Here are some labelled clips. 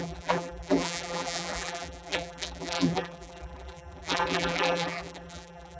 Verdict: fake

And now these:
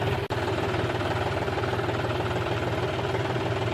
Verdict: fake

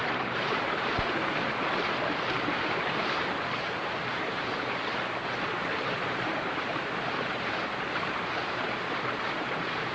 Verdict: fake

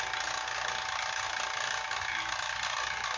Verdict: real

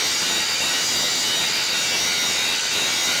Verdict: real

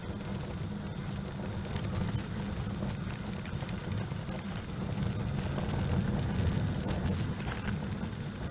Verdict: real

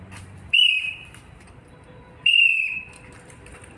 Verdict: fake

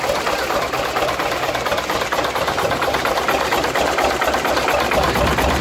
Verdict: real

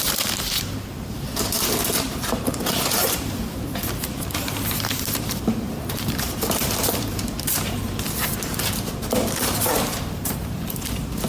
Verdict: fake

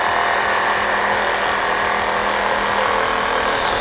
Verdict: real